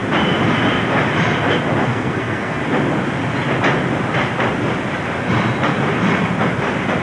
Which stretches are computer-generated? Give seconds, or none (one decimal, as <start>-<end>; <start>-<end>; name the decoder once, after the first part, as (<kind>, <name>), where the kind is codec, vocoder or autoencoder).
1.8-2.6 (codec, SNAC)